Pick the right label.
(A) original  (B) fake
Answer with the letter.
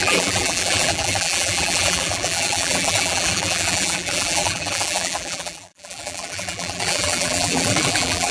B